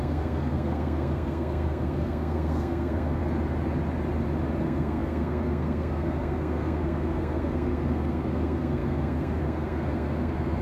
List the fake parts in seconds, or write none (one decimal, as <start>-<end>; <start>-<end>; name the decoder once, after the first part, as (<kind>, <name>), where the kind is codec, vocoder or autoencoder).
0.0-3.2 (codec, SNAC); 4.6-10.6